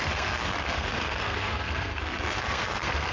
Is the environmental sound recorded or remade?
remade